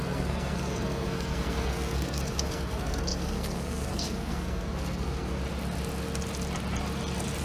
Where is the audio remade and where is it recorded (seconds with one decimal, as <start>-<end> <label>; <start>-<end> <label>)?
0.0-5.4 remade; 5.4-7.4 recorded